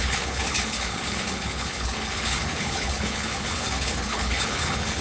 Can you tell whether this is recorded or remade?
remade